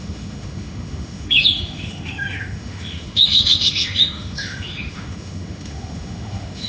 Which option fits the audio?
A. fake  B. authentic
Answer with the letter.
A